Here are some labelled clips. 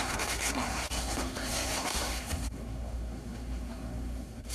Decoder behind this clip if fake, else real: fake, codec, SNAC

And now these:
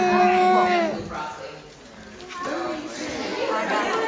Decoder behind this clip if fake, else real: real